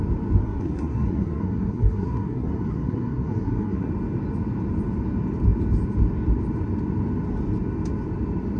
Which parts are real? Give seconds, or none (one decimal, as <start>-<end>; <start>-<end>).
0.0-0.4; 3.9-8.6